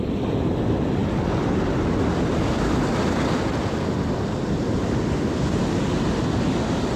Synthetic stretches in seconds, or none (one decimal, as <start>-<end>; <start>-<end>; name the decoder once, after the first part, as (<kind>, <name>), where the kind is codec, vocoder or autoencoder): none